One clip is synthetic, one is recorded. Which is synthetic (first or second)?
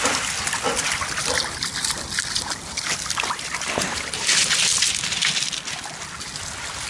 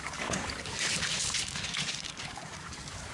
second